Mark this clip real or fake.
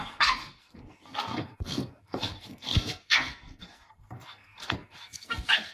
fake